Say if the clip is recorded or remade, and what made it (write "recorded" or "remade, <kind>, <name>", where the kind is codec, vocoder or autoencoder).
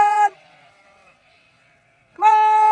remade, vocoder, WaveNeXt